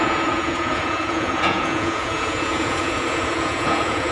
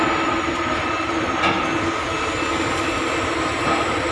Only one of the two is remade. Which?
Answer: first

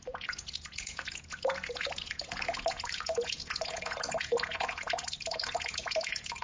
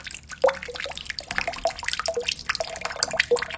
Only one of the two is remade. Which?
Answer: first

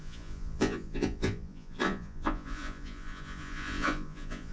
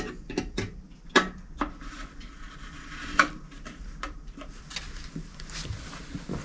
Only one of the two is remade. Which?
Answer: first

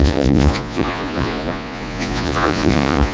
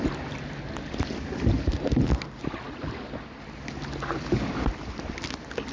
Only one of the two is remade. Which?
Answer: first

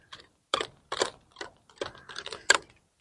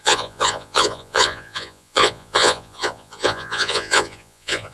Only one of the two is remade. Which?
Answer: second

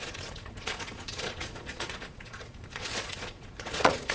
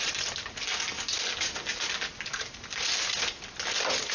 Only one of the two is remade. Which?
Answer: first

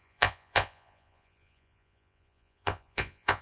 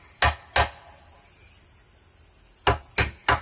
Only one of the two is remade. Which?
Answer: first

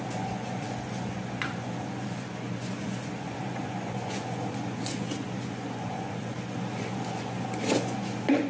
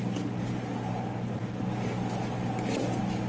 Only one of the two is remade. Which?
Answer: first